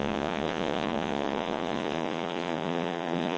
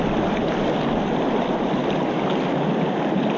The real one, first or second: second